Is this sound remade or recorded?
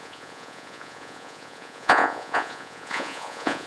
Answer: remade